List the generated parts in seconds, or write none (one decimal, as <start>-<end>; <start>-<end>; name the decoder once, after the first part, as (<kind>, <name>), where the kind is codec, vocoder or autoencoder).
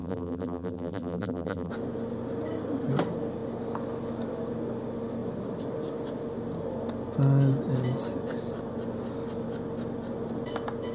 0.0-1.7 (vocoder, BigVGAN v2)